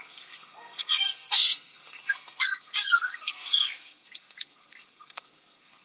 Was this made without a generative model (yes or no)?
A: no